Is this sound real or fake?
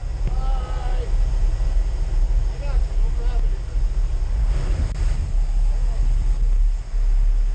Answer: real